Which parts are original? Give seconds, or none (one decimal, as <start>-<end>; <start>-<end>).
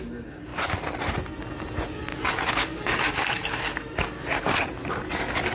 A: 0.0-2.1; 3.0-5.5